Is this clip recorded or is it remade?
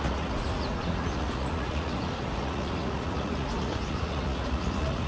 remade